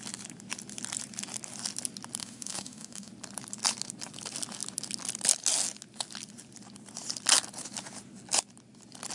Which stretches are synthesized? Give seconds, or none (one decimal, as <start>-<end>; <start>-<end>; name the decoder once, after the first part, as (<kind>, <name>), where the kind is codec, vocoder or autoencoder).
2.2-3.1 (autoencoder, DAC-VAE)